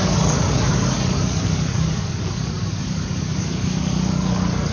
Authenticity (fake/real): fake